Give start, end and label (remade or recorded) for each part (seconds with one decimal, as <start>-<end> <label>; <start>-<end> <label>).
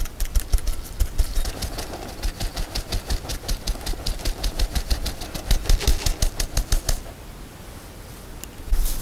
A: 0.0-3.3 recorded; 3.3-5.4 remade; 5.4-9.0 recorded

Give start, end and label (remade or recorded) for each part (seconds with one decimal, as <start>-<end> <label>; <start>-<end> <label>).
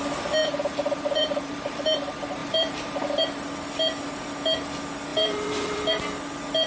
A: 0.0-0.4 recorded; 0.4-2.0 remade; 2.0-2.4 recorded; 2.4-3.2 remade; 3.2-5.1 recorded; 5.1-5.9 remade; 5.9-6.7 recorded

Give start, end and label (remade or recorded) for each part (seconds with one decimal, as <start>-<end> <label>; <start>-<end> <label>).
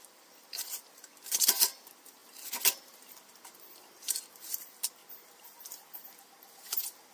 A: 0.0-2.2 remade; 2.2-4.1 recorded; 4.1-5.0 remade; 5.0-7.1 recorded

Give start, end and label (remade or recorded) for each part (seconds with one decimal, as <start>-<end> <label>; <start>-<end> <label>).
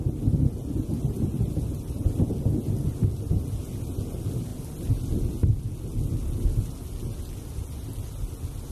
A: 0.0-0.9 recorded; 0.9-2.3 remade; 2.3-4.5 recorded; 4.5-5.2 remade; 5.2-8.7 recorded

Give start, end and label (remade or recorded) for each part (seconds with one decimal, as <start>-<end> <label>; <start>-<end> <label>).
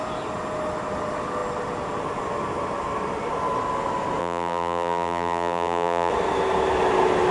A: 0.0-4.2 recorded; 4.2-6.1 remade; 6.1-7.3 recorded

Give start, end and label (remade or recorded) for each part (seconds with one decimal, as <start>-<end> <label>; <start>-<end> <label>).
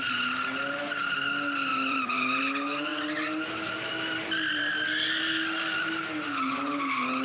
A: 0.0-1.7 recorded; 1.7-2.4 remade; 2.4-7.2 recorded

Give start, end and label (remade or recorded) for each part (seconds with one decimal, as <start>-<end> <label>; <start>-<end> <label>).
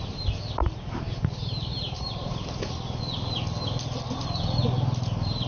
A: 0.0-0.6 recorded; 0.6-3.0 remade; 3.0-5.5 recorded